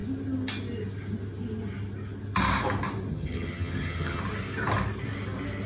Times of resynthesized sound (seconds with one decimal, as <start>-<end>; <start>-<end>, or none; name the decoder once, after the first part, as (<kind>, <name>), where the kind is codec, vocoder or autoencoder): 3.1-4.2 (vocoder, HiFi-GAN)